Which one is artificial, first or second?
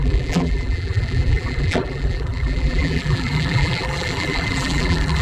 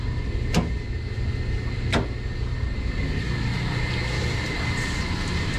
first